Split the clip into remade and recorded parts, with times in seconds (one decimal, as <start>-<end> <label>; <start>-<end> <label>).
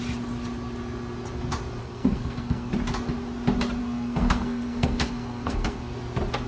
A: 0.0-1.8 recorded; 1.8-2.7 remade; 2.7-3.8 recorded; 3.8-5.9 remade; 5.9-6.5 recorded